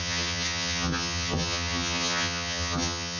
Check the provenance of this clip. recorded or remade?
remade